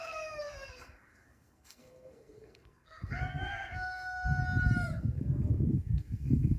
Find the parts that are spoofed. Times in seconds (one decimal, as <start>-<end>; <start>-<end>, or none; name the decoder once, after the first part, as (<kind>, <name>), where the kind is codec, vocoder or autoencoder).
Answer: 0.0-4.4 (codec, SNAC); 5.0-6.6